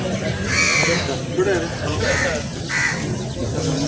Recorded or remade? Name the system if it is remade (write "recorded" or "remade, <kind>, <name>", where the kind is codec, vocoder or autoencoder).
recorded